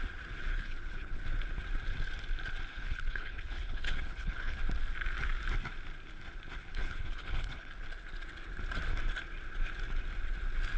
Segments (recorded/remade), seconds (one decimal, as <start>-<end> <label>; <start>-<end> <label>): 0.0-0.5 recorded; 0.5-1.2 remade; 1.2-2.7 recorded; 2.7-4.6 remade; 4.6-6.7 recorded; 6.7-7.7 remade; 7.7-10.8 recorded